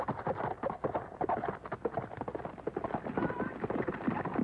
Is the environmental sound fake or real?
real